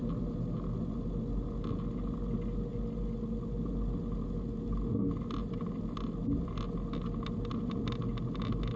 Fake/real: real